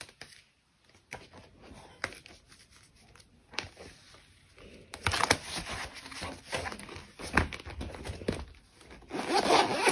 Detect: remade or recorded recorded